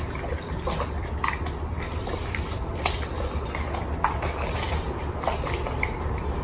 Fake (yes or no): no